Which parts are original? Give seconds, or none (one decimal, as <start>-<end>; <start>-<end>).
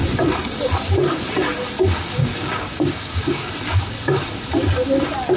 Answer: 0.0-2.2; 3.5-5.4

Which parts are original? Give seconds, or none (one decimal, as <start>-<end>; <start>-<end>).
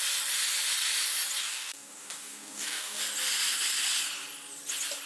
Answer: 0.0-1.4; 3.0-5.1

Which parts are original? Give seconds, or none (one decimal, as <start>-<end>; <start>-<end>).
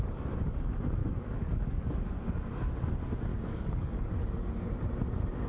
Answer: 0.0-1.0; 1.9-3.3; 4.1-5.5